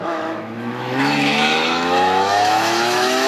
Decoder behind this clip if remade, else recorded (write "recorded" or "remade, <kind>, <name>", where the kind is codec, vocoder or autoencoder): remade, autoencoder, DAC-VAE